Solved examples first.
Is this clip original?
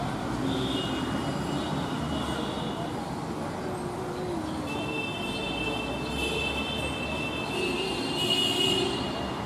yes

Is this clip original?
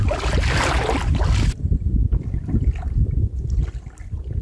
yes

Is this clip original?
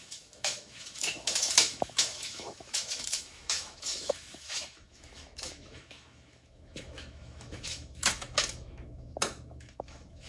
no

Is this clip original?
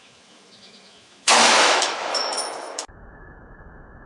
no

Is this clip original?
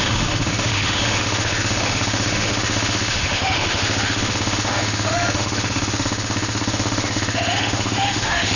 no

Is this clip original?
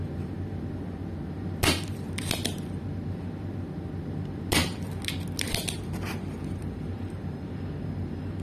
yes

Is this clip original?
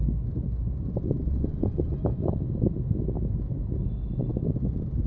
yes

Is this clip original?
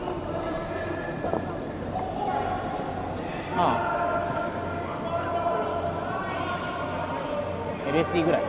yes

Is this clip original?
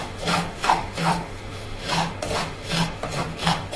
no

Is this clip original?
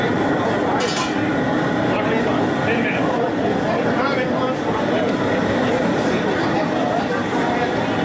yes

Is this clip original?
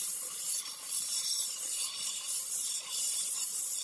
yes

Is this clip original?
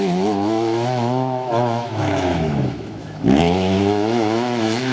no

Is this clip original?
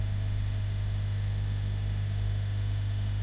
no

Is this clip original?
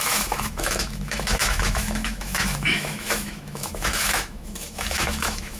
no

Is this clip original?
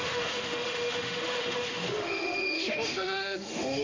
no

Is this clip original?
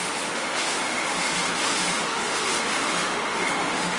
no